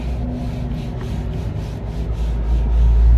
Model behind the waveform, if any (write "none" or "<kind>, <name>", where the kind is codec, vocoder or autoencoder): none